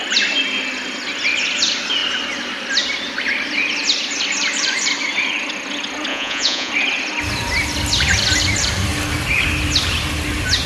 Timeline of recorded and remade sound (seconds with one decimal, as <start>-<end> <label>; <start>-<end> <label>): 0.0-6.1 recorded; 6.1-6.7 remade; 6.7-10.7 recorded